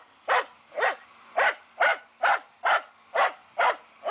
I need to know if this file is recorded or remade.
recorded